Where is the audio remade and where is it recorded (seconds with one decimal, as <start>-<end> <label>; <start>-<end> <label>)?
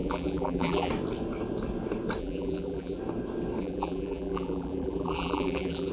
0.0-0.9 remade; 0.9-2.2 recorded; 2.2-3.0 remade; 3.0-3.6 recorded; 3.6-5.9 remade